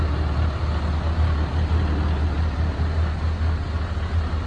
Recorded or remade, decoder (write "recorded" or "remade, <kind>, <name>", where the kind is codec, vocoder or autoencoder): recorded